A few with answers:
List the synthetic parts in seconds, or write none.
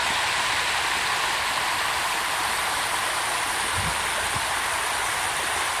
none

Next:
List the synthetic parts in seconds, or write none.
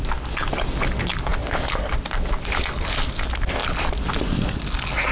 1.3-2.9 (vocoder, BigVGAN v2); 3.6-4.1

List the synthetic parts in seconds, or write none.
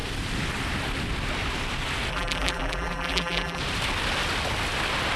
2.1-3.6 (vocoder, BigVGAN v2)